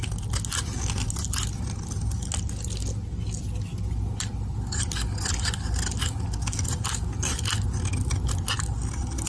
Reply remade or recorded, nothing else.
recorded